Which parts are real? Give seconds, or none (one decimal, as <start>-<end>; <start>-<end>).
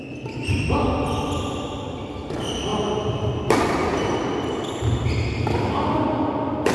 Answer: 0.0-6.7